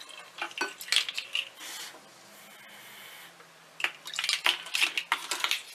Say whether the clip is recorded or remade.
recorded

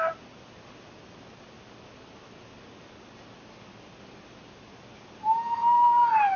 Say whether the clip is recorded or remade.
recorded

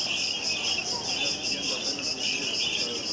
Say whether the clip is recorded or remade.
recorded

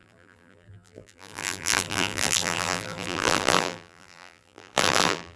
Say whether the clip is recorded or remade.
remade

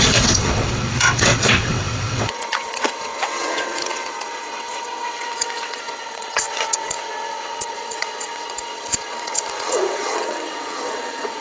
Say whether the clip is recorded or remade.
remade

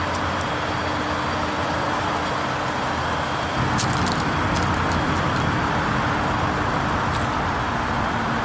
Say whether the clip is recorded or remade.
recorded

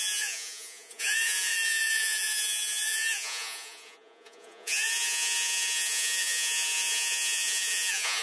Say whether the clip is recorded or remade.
remade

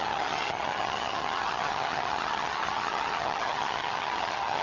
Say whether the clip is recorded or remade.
remade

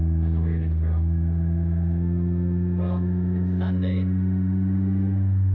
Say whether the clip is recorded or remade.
remade